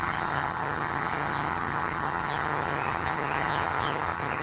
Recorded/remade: remade